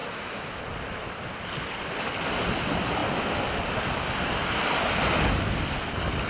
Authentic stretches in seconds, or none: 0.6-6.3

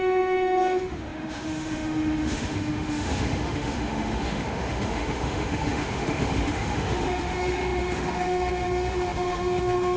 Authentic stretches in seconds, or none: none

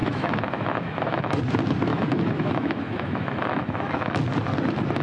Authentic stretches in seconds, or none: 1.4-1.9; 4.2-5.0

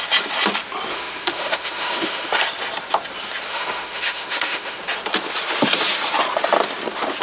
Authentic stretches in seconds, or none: 0.0-0.9; 2.4-3.5; 4.8-7.2